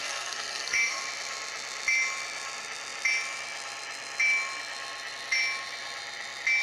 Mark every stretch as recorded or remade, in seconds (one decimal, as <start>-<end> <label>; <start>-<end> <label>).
0.0-1.0 remade; 1.0-6.6 recorded